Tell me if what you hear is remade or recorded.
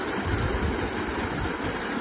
recorded